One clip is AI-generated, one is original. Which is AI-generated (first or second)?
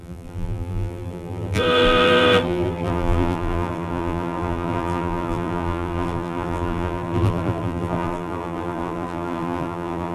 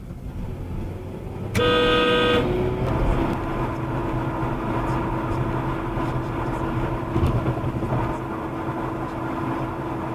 first